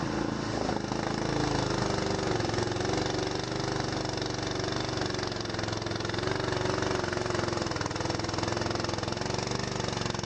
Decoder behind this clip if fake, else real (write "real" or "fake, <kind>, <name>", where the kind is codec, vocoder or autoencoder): real